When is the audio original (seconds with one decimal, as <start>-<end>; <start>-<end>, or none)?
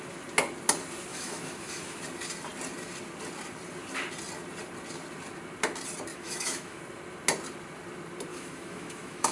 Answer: 0.0-1.1; 2.0-6.1; 6.8-8.3